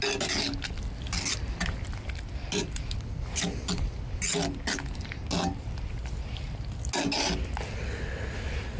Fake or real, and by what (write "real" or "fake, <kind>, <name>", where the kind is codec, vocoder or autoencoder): real